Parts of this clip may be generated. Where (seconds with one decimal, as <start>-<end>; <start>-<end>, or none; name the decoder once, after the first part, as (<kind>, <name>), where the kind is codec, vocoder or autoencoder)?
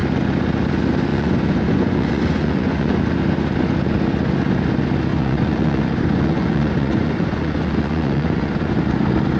1.1-3.0 (vocoder, Vocos); 5.1-8.8